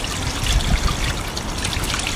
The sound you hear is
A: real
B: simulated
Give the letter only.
A